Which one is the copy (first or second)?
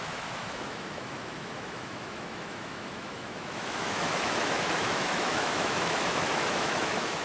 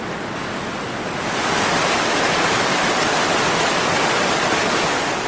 first